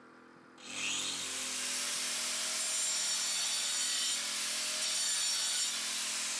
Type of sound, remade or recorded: recorded